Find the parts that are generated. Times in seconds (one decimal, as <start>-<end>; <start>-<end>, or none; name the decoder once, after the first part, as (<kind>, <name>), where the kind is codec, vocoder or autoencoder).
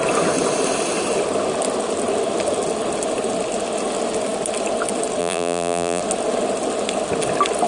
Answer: 5.2-6.0 (vocoder, BigVGAN v2)